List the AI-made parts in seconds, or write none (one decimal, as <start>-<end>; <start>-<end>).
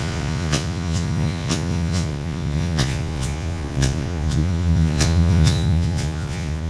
0.0-6.7